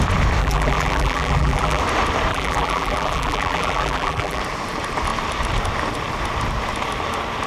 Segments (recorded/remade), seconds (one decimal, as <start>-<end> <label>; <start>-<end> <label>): 0.0-0.4 recorded; 0.4-1.8 remade; 1.8-2.3 recorded; 2.3-4.4 remade; 4.4-7.5 recorded